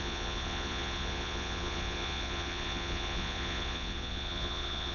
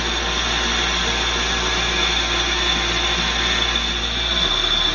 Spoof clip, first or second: first